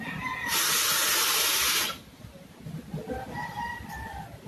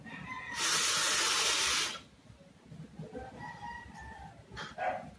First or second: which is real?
second